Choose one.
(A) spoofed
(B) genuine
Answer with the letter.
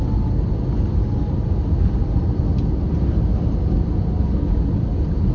B